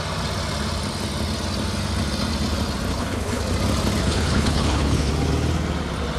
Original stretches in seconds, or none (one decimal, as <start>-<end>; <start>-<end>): 0.0-2.9; 3.4-4.0; 5.1-6.2